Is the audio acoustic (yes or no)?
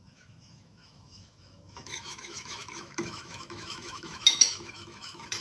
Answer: no